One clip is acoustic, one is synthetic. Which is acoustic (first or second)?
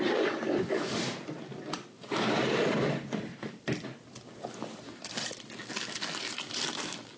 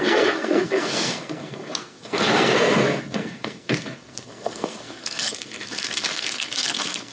first